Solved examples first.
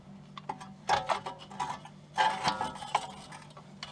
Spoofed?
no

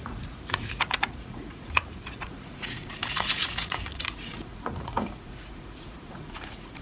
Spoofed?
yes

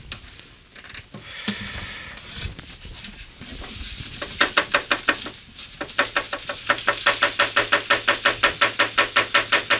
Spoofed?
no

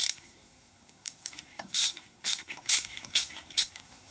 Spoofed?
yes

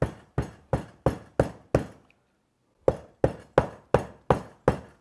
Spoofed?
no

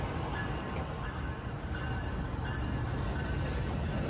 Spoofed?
no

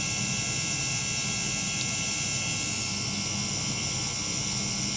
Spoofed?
no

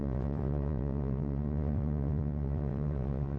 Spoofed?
yes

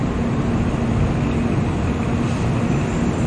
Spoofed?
no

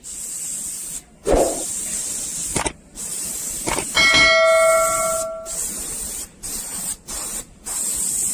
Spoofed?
no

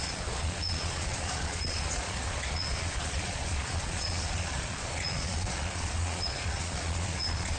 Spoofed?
yes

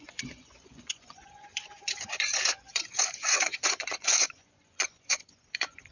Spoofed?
yes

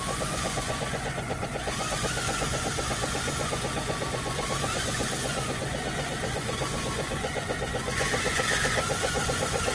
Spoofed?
yes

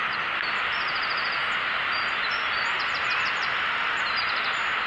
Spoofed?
no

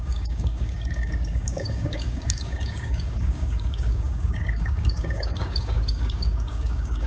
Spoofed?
yes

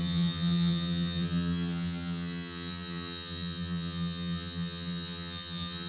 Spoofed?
yes